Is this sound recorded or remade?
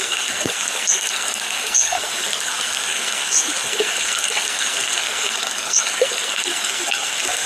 remade